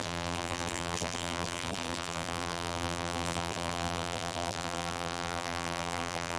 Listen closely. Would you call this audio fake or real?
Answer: fake